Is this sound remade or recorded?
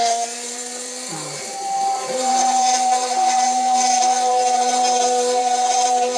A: remade